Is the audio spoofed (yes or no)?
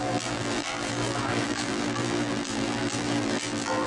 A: yes